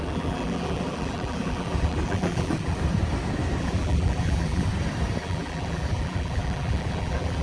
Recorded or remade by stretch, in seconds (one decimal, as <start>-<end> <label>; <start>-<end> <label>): 0.0-2.8 remade; 2.8-3.6 recorded; 3.6-4.7 remade; 4.7-5.2 recorded; 5.2-7.4 remade